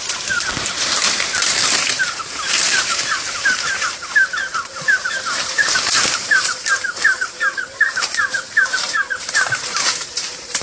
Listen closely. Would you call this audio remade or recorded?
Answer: remade